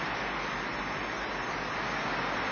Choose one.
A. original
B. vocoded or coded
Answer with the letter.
A